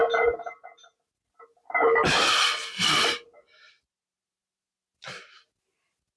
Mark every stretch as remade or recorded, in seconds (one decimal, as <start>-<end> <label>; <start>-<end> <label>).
0.0-6.2 recorded